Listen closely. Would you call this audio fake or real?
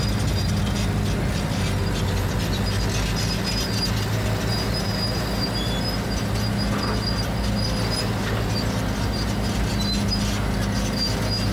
real